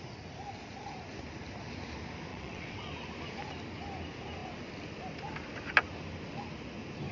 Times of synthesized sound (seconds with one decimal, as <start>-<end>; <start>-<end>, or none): 2.3-2.9